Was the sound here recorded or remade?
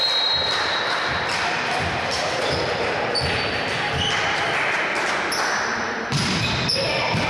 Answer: remade